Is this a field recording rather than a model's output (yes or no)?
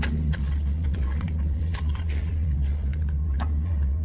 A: no